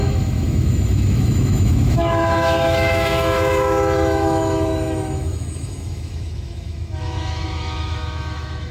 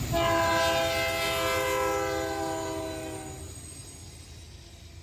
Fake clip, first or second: first